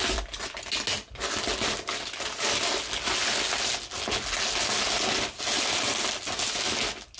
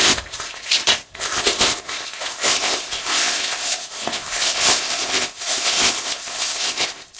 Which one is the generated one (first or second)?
second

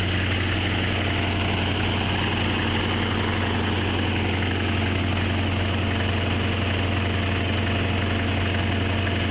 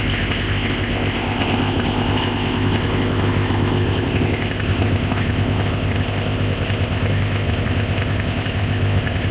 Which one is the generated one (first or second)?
second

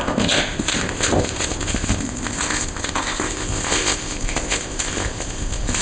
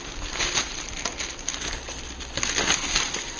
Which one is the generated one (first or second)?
first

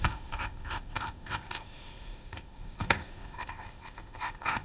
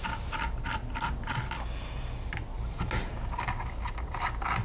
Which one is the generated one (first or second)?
first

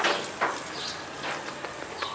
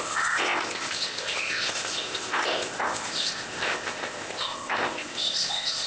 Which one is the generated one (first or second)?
second